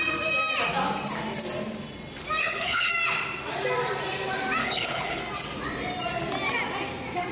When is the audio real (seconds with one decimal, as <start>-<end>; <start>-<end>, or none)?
0.0-2.4; 2.9-4.6; 5.2-7.3